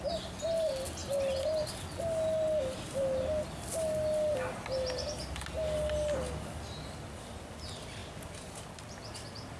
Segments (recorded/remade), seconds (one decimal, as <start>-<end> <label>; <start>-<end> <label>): 0.0-9.6 recorded